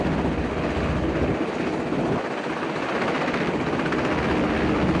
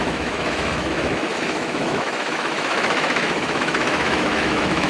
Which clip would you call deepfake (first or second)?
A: second